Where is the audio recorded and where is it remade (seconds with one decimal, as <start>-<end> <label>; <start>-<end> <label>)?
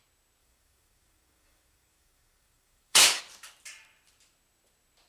0.0-0.4 recorded; 0.4-3.2 remade; 3.2-5.1 recorded